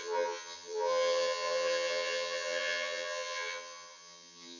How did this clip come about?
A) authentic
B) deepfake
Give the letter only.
B